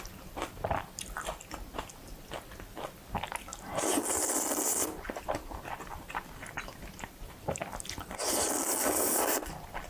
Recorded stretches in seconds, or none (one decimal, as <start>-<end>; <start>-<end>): 0.0-9.9